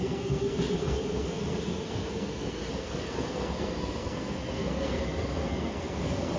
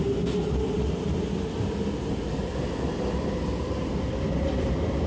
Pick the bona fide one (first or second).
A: second